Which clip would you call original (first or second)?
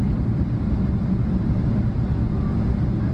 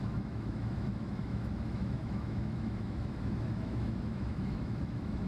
first